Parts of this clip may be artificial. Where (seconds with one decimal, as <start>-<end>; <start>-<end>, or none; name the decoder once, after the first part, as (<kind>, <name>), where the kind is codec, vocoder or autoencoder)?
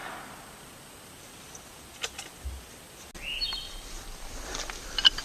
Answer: none